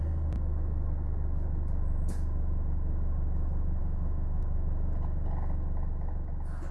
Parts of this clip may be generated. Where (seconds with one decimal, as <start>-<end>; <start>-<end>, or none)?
3.8-4.4